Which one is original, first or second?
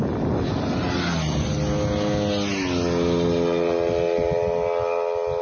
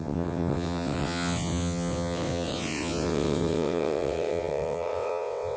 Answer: first